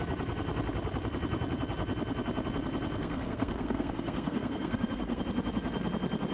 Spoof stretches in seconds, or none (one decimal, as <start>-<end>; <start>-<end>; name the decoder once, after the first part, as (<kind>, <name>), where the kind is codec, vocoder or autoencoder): 3.0-5.2 (codec, SNAC)